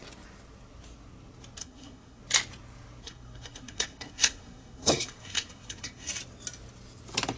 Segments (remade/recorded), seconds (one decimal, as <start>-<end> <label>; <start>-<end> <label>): 0.0-1.6 recorded; 1.6-2.2 remade; 2.2-3.0 recorded; 3.0-6.1 remade; 6.1-7.4 recorded